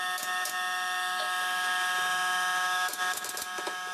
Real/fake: fake